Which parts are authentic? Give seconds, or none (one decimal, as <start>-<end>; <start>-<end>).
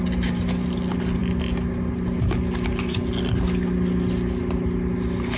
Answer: 0.0-5.4